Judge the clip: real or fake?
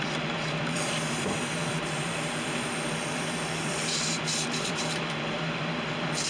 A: fake